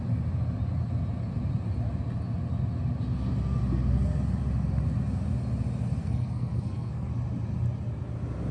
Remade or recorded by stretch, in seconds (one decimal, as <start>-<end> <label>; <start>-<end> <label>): 0.0-6.0 recorded; 6.0-7.1 remade; 7.1-8.5 recorded